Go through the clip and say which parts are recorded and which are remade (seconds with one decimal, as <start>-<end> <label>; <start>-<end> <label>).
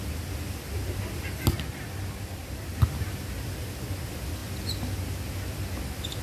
0.0-6.2 recorded